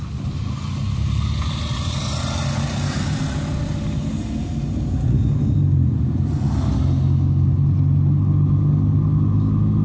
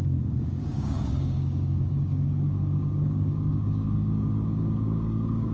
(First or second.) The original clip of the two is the first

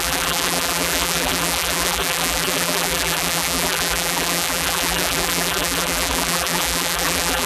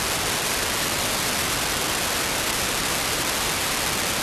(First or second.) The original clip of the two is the second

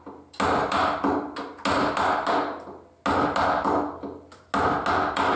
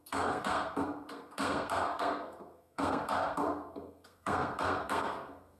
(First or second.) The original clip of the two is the first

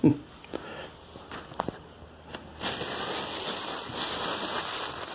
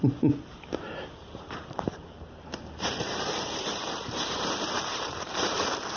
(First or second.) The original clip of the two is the first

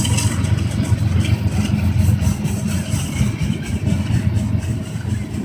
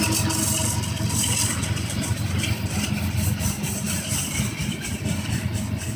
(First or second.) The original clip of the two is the first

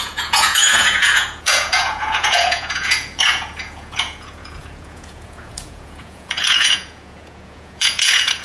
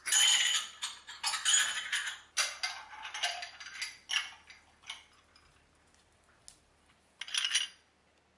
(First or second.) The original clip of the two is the second